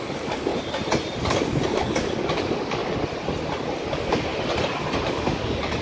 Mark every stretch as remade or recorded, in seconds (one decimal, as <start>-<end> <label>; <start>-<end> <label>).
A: 0.0-0.5 remade; 0.5-1.3 recorded; 1.3-2.8 remade; 2.8-3.9 recorded; 3.9-4.3 remade; 4.3-5.0 recorded; 5.0-5.8 remade